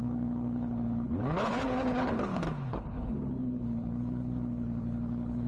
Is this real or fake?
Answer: fake